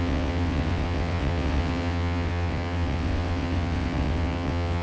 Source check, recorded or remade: remade